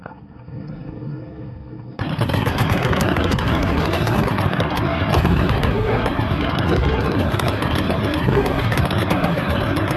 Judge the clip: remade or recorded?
remade